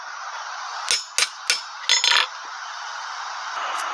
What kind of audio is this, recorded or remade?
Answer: recorded